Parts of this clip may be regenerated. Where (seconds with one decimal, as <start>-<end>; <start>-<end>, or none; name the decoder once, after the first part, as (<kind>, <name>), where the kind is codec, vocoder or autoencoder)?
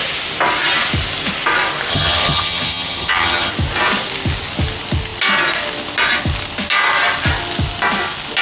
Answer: 1.9-3.5 (vocoder, HiFi-GAN)